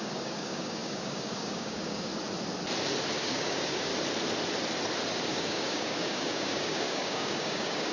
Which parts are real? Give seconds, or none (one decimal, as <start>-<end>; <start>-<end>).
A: 2.1-3.2; 3.9-5.3